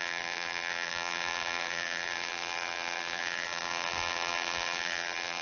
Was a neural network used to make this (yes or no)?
yes